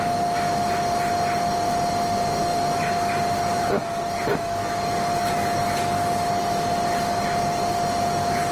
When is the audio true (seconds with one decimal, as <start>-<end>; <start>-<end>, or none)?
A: 0.0-8.5